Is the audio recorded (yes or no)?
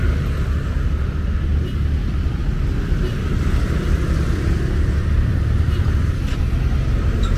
yes